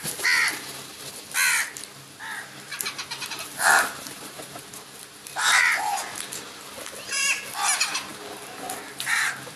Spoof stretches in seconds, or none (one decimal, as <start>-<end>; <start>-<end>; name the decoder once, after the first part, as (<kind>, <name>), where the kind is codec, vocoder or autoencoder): 2.7-6.6 (vocoder, BigVGAN v2); 8.1-9.6